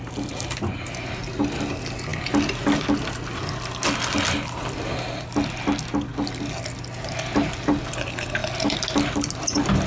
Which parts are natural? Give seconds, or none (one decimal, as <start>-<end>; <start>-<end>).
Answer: 0.0-9.9